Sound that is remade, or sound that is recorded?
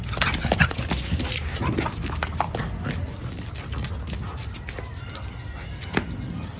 recorded